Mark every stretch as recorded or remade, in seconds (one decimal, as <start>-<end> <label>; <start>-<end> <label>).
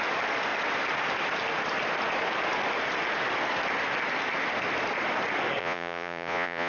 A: 0.0-5.6 recorded; 5.6-6.7 remade